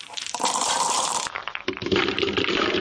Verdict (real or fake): fake